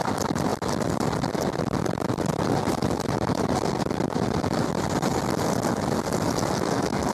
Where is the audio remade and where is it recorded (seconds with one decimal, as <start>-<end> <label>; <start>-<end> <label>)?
0.0-2.8 remade; 2.8-3.8 recorded; 3.8-5.1 remade; 5.1-7.1 recorded